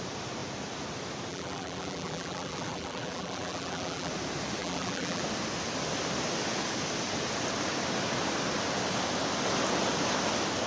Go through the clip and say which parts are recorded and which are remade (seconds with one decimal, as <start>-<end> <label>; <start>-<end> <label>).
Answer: 0.0-1.3 recorded; 1.3-4.1 remade; 4.1-4.6 recorded; 4.6-5.2 remade; 5.2-10.7 recorded